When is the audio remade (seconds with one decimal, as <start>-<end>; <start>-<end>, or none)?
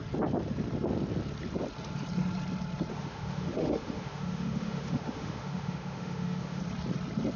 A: 2.9-6.6